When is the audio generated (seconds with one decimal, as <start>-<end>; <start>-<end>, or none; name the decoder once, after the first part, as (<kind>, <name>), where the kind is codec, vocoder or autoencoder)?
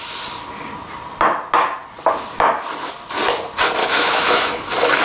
3.8-4.6 (autoencoder, DAC-VAE)